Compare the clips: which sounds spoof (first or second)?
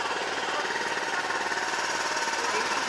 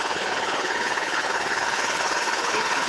second